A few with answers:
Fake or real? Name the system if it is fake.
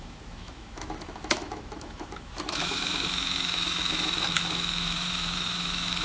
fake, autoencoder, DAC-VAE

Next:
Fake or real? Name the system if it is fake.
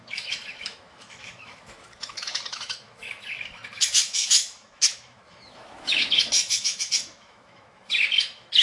fake, autoencoder, DAC-VAE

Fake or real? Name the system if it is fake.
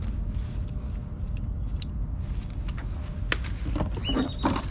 real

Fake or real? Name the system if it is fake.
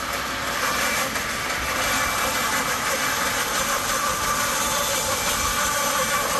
real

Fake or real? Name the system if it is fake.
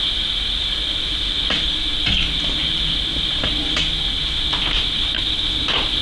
real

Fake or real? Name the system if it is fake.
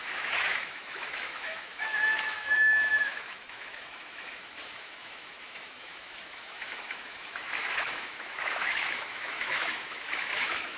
fake, autoencoder, DAC-VAE